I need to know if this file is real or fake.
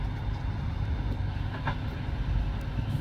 real